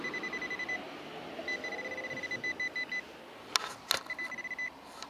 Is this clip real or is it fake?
real